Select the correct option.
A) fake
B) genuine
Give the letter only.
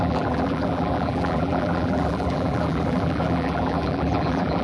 A